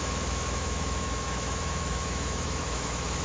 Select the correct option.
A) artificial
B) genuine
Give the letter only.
A